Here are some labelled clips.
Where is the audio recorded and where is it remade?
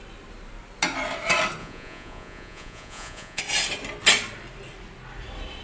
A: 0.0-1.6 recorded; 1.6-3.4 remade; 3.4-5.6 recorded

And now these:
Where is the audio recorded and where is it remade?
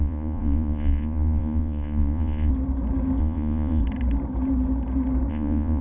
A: 0.0-2.5 remade; 2.5-3.2 recorded; 3.2-3.8 remade; 3.8-5.3 recorded; 5.3-5.8 remade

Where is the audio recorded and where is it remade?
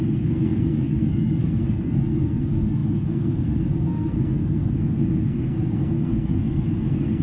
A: 0.0-7.2 remade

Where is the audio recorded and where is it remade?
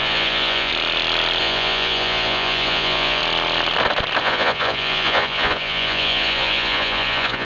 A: 0.0-0.7 remade; 0.7-1.4 recorded; 1.4-3.2 remade; 3.2-4.2 recorded; 4.2-7.4 remade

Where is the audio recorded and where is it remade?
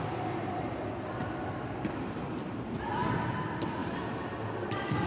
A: 0.0-1.2 recorded; 1.2-3.0 remade; 3.0-3.8 recorded; 3.8-5.1 remade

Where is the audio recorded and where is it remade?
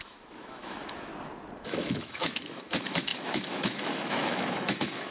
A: 0.0-1.1 remade; 1.1-1.6 recorded; 1.6-5.1 remade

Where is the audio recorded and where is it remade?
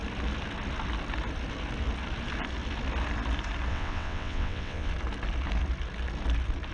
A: 0.0-3.7 recorded; 3.7-4.9 remade; 4.9-6.7 recorded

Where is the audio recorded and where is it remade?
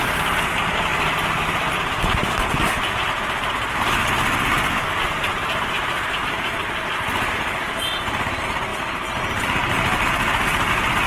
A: 0.0-5.0 recorded; 5.0-6.9 remade; 6.9-11.1 recorded